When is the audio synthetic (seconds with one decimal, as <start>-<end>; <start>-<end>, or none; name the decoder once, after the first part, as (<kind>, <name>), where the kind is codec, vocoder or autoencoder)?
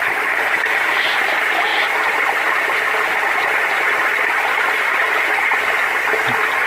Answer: 0.0-6.7 (vocoder, BigVGAN v2)